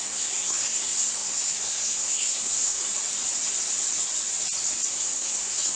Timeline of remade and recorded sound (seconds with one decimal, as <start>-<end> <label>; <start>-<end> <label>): 0.0-2.9 remade; 2.9-4.9 recorded; 4.9-5.7 remade